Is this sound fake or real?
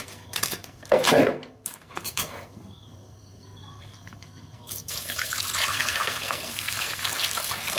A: fake